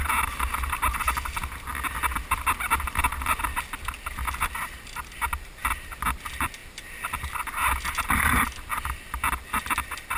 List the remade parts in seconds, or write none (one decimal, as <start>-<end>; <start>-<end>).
none